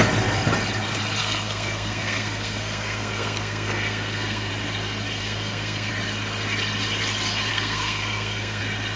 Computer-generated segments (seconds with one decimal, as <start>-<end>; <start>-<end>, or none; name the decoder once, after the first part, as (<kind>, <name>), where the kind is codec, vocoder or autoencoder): 1.2-4.5 (codec, SNAC); 5.2-5.9; 7.5-8.6